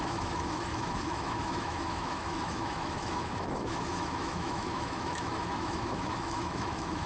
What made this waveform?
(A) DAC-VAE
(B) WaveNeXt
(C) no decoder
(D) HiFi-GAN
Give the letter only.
A